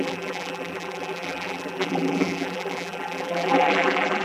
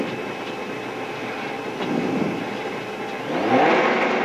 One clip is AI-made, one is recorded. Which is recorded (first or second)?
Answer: second